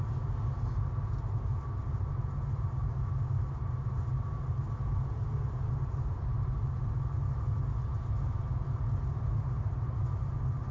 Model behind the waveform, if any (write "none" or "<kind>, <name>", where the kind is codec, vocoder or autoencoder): none